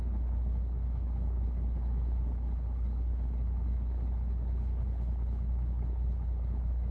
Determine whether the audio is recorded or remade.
remade